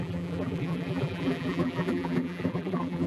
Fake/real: fake